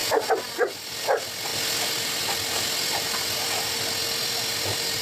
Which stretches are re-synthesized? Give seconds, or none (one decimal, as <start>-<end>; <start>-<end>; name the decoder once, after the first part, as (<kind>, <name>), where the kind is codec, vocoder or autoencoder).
none